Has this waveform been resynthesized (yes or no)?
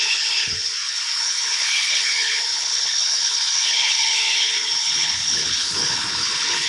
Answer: yes